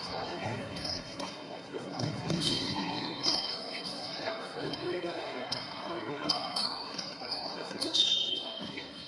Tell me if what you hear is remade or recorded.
remade